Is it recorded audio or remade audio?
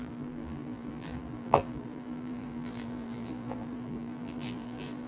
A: remade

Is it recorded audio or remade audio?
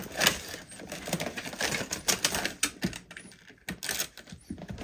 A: recorded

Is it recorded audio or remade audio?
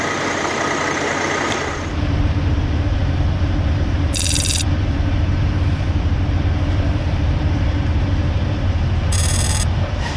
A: remade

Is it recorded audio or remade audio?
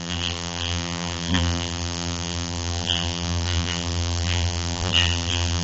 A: remade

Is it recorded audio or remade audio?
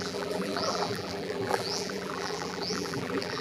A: remade